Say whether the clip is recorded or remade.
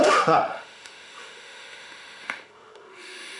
remade